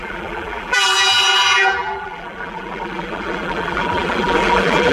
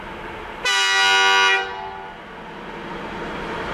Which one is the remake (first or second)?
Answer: first